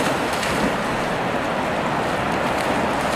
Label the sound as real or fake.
real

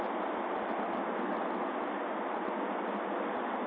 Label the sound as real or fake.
real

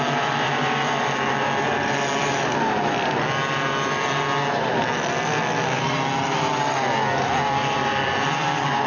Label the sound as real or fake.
real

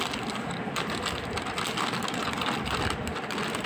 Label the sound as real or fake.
real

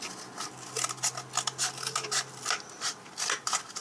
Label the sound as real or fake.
real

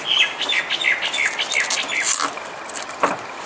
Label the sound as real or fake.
real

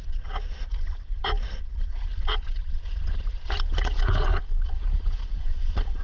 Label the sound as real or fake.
fake